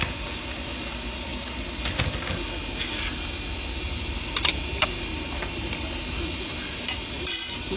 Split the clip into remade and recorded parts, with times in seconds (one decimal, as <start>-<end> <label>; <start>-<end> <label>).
0.0-7.8 recorded